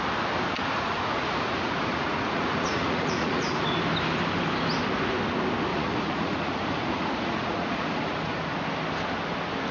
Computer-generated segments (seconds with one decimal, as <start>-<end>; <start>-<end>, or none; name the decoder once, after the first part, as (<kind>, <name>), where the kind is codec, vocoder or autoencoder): 0.6-3.7 (vocoder, Vocos); 5.7-8.5